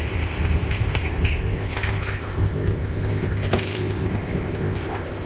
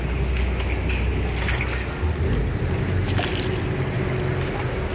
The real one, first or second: second